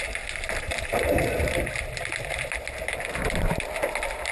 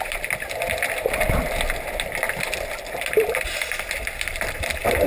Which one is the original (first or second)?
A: first